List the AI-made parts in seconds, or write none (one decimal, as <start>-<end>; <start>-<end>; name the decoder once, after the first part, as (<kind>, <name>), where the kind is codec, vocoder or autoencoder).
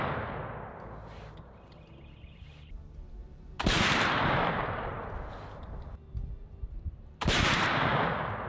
3.2-7.9 (vocoder, BigVGAN v2)